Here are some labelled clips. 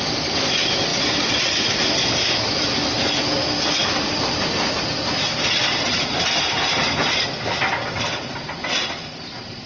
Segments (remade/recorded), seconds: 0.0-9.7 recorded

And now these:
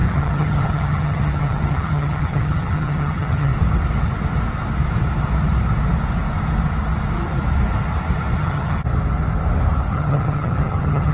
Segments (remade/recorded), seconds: 0.0-3.5 remade; 3.5-8.4 recorded; 8.4-8.8 remade; 8.8-9.9 recorded; 9.9-11.1 remade

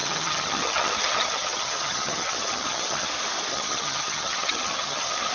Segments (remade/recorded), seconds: 0.0-3.1 remade; 3.1-3.5 recorded; 3.5-5.3 remade